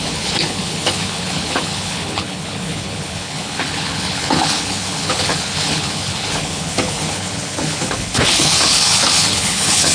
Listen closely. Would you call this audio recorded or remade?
remade